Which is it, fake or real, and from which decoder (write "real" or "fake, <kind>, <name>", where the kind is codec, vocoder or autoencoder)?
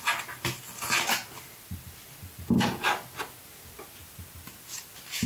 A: real